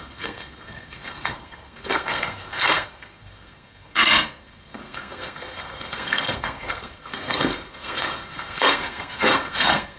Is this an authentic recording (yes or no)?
no